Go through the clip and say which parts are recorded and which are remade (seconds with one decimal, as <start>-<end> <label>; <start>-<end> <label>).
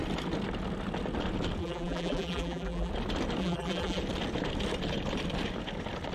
0.0-1.6 recorded; 1.6-2.9 remade; 2.9-3.4 recorded; 3.4-4.0 remade; 4.0-6.1 recorded